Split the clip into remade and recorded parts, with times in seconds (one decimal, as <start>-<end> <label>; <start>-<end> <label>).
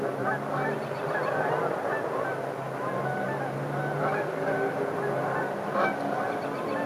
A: 0.0-6.9 recorded